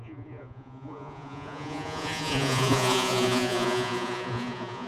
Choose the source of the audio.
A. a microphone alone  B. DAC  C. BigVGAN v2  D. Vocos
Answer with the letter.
D